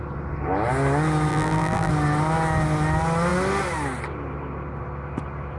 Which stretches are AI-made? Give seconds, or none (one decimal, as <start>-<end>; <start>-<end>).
1.3-1.9